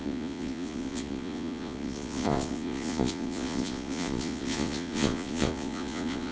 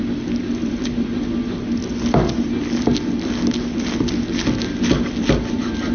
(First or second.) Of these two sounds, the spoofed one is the first